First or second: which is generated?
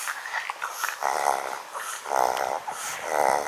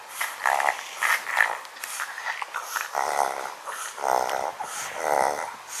first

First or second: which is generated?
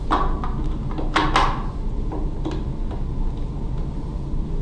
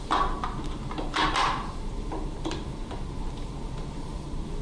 second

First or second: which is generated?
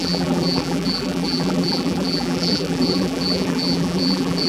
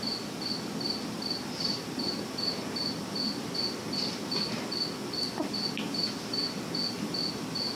first